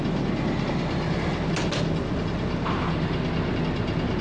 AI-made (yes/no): no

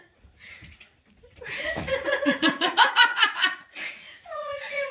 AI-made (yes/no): yes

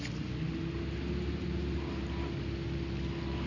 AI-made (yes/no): no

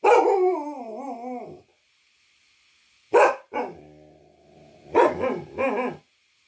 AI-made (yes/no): no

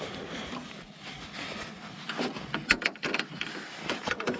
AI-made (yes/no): no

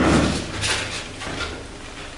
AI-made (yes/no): no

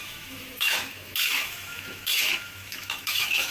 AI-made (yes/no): yes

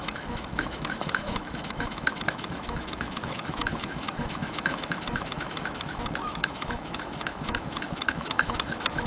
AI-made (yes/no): yes